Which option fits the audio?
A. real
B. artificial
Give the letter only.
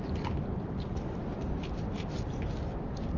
A